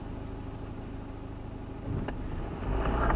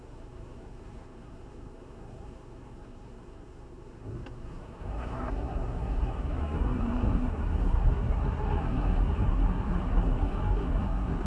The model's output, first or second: second